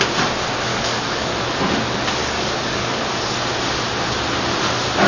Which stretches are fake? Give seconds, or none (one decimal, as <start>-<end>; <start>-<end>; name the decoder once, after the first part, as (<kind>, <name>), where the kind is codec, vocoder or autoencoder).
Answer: 0.7-1.3 (codec, DAC); 2.2-3.0

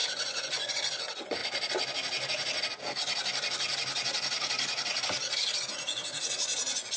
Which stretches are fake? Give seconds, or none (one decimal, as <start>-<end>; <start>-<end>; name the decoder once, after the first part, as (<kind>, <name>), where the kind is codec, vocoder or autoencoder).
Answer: 0.0-1.4 (vocoder, Vocos); 5.6-7.0

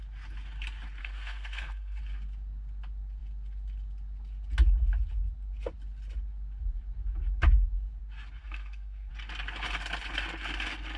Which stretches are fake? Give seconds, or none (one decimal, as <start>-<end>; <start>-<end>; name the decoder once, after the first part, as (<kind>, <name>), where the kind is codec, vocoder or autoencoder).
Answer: 1.0-2.0 (codec, SNAC); 8.4-9.1

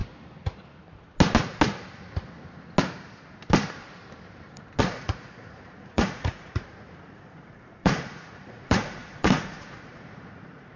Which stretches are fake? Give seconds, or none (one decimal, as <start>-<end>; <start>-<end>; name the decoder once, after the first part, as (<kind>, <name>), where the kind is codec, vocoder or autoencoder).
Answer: 4.8-10.8 (vocoder, Vocos)

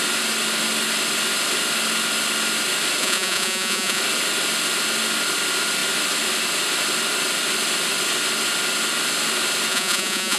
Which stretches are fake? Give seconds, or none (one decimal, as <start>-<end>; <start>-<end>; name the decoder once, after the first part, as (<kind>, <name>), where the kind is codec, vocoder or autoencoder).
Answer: 3.0-4.0 (vocoder, Vocos); 9.7-10.4

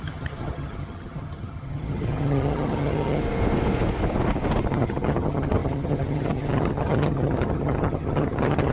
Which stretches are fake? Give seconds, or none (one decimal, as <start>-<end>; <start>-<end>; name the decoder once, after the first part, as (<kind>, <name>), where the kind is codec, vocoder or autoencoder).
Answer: 0.0-3.2 (vocoder, HiFi-GAN); 4.7-8.7